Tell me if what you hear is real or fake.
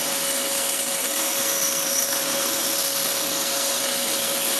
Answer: fake